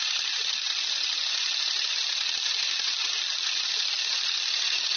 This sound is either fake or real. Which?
real